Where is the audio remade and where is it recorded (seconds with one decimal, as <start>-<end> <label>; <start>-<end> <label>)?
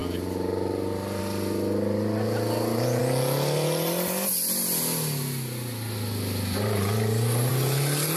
0.0-8.2 recorded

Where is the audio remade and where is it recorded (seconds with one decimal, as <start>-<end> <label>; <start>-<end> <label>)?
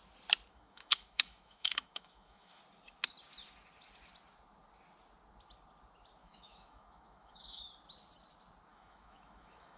0.0-0.5 recorded; 0.5-2.6 remade; 2.6-6.2 recorded; 6.2-7.6 remade; 7.6-8.7 recorded; 8.7-9.8 remade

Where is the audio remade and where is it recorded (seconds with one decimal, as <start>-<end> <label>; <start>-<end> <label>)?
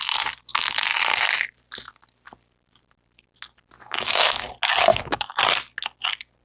0.0-3.8 recorded; 3.8-4.4 remade; 4.4-4.9 recorded; 4.9-5.4 remade; 5.4-6.4 recorded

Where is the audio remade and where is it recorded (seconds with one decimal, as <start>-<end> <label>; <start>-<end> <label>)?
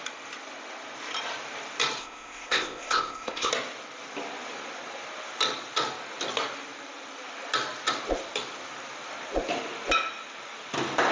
0.0-2.0 recorded; 2.0-3.5 remade; 3.5-11.1 recorded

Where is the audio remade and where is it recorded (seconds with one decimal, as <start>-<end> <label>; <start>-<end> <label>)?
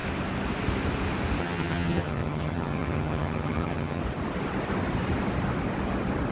0.0-1.4 recorded; 1.4-4.0 remade; 4.0-6.3 recorded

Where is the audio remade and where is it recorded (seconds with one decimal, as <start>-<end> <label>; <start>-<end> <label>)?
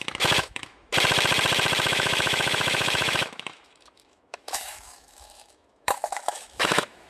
0.0-0.9 remade; 0.9-1.9 recorded; 1.9-7.1 remade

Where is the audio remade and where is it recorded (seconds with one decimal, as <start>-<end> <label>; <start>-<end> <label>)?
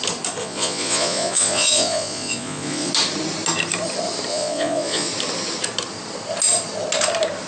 0.0-0.4 recorded; 0.4-2.9 remade; 2.9-4.3 recorded; 4.3-5.1 remade; 5.1-7.5 recorded